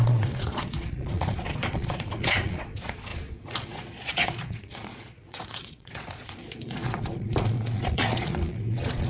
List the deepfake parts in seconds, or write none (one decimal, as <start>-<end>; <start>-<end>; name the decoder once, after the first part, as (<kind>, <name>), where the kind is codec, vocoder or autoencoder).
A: 0.0-9.1 (vocoder, Vocos)